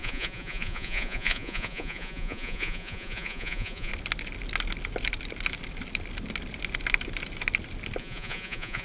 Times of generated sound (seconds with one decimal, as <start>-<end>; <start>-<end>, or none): 0.0-3.9; 8.0-8.8